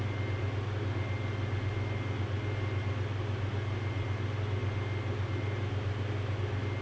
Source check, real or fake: real